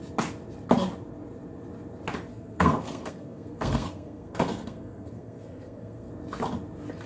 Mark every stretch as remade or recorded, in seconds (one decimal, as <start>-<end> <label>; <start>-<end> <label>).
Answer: 0.0-2.3 recorded; 2.3-6.1 remade; 6.1-7.1 recorded